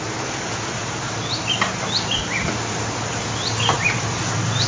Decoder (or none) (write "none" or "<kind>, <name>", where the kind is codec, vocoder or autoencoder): none